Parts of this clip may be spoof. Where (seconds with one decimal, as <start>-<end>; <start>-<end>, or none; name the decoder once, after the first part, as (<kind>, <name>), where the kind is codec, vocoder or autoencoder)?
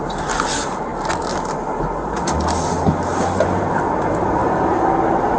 none